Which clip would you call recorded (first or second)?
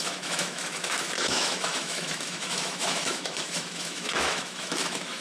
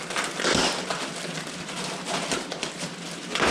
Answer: second